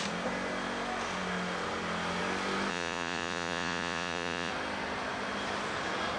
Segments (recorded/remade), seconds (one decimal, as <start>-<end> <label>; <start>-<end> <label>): 0.0-2.7 recorded; 2.7-4.5 remade; 4.5-6.2 recorded